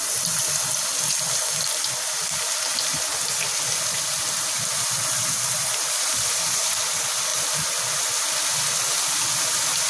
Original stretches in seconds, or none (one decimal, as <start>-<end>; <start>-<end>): 0.0-9.9